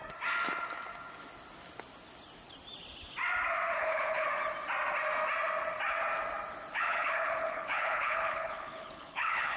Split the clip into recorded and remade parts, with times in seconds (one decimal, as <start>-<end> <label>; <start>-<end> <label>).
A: 0.0-3.8 recorded; 3.8-4.3 remade; 4.3-6.7 recorded; 6.7-9.6 remade